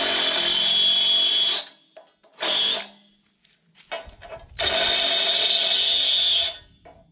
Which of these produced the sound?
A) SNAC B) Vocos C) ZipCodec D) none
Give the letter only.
D